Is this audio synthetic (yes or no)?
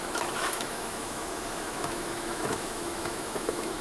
yes